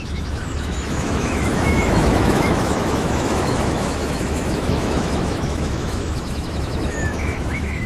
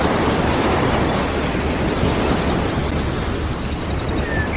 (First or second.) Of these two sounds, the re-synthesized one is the first